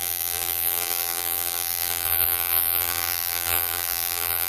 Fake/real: fake